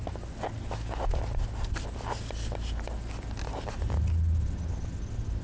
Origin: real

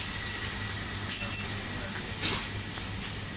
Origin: real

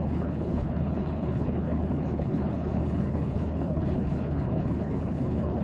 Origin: fake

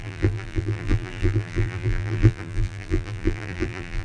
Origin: fake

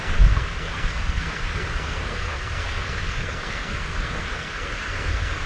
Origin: fake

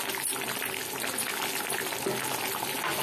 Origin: real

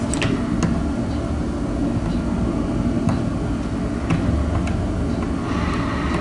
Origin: real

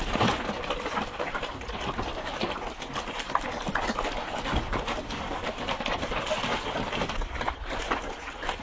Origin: real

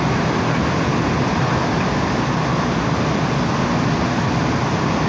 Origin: real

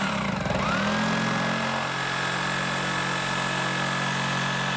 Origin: real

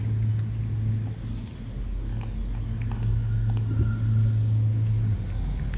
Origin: real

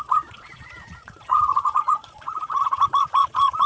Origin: fake